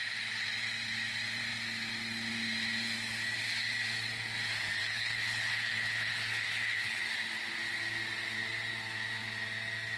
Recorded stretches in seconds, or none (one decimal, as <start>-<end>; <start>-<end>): 0.0-4.8; 7.0-10.0